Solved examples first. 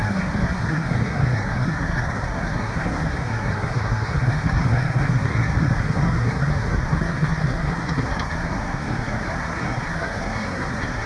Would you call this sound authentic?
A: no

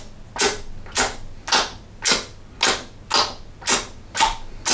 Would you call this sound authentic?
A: yes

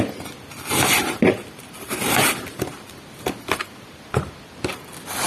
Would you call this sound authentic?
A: yes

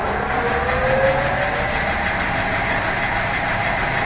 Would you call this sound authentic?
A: yes